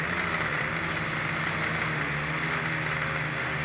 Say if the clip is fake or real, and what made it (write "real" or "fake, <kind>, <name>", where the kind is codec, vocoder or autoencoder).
real